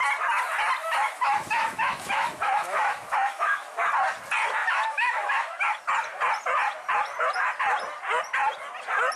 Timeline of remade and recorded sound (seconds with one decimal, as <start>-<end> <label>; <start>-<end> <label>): 0.0-0.8 recorded; 0.8-3.9 remade; 3.9-4.6 recorded; 4.6-5.8 remade; 5.8-9.2 recorded